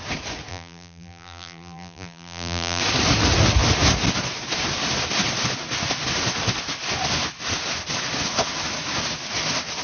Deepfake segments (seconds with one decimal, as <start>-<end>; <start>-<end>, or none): 0.5-2.8

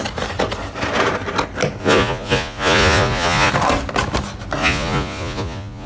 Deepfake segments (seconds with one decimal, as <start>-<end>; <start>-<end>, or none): 1.8-3.5; 4.6-5.9

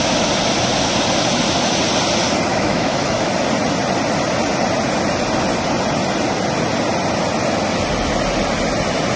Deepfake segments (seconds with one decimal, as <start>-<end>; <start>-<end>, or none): 2.5-3.3

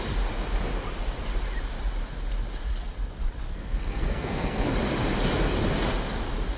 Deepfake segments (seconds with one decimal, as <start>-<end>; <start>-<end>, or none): 3.5-4.7

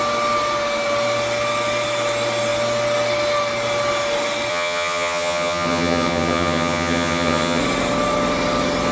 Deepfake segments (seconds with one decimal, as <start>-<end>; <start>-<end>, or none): 4.5-7.6

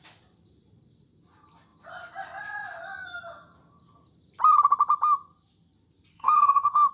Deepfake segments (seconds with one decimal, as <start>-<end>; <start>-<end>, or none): 6.1-6.9